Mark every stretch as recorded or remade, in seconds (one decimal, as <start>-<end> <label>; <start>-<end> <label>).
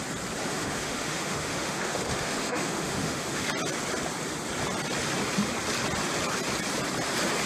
0.0-0.5 recorded; 0.5-3.5 remade; 3.5-7.5 recorded